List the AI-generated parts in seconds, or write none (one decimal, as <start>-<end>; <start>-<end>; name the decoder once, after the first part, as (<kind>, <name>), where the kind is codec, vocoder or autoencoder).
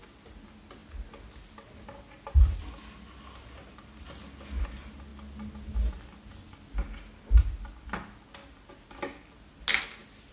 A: none